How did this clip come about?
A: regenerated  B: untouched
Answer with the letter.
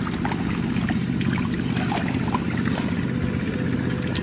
B